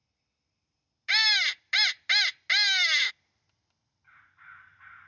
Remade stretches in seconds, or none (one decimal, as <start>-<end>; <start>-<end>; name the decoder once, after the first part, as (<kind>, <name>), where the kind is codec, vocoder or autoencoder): none